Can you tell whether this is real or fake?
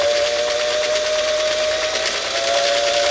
real